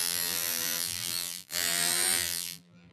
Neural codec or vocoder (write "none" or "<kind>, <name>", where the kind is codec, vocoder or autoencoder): vocoder, BigVGAN v2